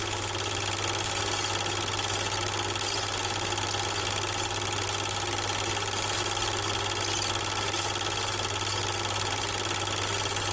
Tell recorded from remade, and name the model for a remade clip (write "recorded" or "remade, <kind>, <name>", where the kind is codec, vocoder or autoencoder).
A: recorded